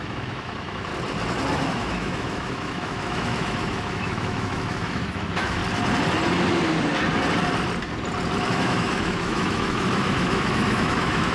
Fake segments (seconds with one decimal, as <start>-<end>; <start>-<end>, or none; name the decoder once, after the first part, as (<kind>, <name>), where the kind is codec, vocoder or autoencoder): 0.0-0.9 (autoencoder, DAC-VAE); 1.5-5.6; 8.5-11.3